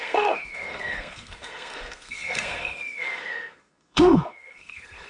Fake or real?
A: fake